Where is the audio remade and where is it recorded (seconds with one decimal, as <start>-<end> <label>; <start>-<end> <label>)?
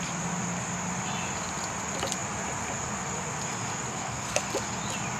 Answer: 0.0-3.9 recorded; 3.9-4.5 remade; 4.5-5.2 recorded